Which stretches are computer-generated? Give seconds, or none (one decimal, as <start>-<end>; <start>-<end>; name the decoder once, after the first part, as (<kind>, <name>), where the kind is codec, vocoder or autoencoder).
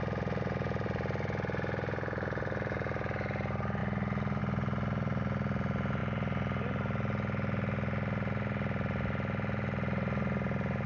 none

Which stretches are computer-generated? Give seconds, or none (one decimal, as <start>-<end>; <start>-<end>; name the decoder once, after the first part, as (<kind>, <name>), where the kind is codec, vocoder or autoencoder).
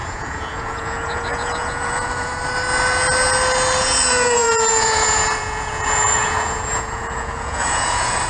0.0-2.3 (vocoder, Vocos); 3.8-8.3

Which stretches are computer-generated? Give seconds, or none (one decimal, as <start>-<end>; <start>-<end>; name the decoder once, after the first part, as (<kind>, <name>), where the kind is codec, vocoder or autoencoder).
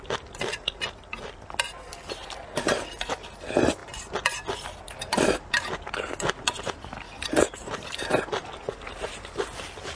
none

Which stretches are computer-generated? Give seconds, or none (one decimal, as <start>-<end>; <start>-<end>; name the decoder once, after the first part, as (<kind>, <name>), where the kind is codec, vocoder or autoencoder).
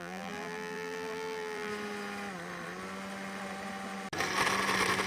0.0-1.7 (vocoder, BigVGAN v2)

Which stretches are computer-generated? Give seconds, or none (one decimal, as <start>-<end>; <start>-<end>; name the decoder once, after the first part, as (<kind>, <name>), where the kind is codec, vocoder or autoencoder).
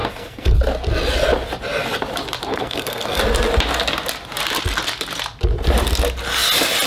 0.0-0.6 (codec, SNAC); 2.5-3.2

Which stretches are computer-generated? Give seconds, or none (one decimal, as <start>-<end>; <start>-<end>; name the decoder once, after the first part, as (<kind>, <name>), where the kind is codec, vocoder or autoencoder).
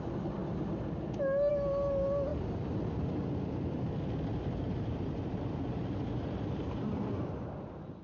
4.3-6.9 (vocoder, BigVGAN v2)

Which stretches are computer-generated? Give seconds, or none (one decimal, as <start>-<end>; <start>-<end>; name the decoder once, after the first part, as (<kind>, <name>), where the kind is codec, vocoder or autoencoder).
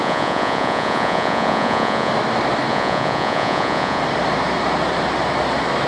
0.0-2.1 (vocoder, Vocos); 2.7-4.0